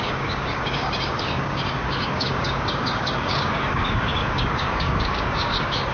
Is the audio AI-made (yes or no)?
yes